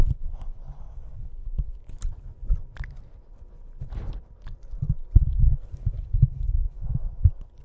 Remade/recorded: recorded